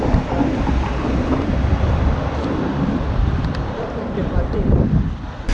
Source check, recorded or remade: remade